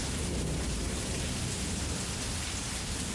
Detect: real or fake real